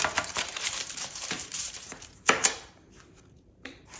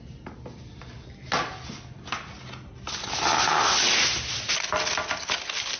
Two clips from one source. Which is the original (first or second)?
second